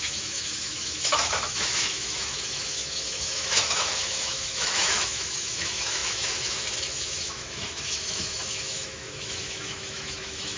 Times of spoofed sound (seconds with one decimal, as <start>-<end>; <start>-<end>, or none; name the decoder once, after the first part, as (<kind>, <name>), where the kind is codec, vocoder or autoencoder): 0.0-10.6 (autoencoder, DAC-VAE)